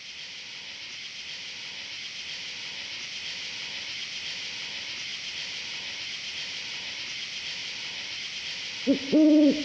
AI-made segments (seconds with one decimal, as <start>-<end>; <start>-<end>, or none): 5.1-6.9; 7.6-8.3